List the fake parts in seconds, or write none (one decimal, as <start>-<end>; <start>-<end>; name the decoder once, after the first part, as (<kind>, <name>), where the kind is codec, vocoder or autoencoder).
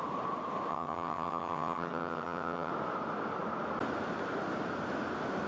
0.7-2.7 (vocoder, HiFi-GAN)